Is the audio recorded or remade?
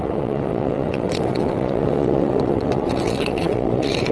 remade